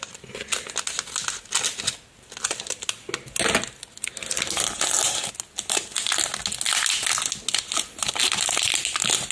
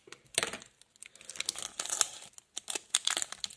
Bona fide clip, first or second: first